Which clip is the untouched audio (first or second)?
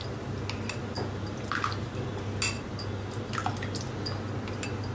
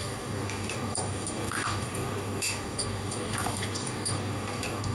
first